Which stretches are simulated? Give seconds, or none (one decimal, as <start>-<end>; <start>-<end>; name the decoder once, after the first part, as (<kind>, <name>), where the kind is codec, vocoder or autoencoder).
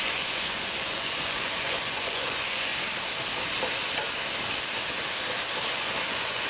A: 0.0-2.7 (vocoder, Vocos); 5.7-6.5